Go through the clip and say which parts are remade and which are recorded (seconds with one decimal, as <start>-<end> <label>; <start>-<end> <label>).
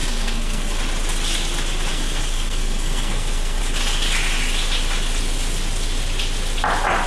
0.0-0.8 remade; 0.8-1.9 recorded; 1.9-3.6 remade; 3.6-7.1 recorded